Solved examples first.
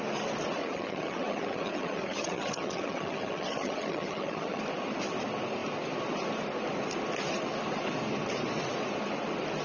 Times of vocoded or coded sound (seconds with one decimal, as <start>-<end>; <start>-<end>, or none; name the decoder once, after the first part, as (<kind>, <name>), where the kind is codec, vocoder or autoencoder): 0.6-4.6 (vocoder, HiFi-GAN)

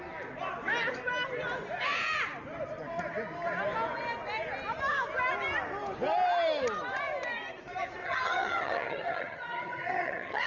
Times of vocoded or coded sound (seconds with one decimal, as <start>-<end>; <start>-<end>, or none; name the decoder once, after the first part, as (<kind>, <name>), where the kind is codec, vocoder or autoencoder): 8.0-10.5 (vocoder, HiFi-GAN)

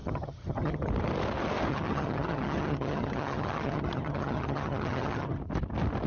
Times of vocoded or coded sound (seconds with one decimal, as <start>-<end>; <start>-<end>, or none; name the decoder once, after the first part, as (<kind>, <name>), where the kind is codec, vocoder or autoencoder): 0.0-0.9 (vocoder, HiFi-GAN); 1.7-5.4

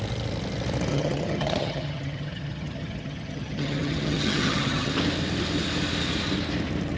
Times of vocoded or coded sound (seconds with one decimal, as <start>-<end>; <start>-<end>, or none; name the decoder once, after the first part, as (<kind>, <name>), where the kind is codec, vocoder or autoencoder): 0.9-4.9 (vocoder, HiFi-GAN)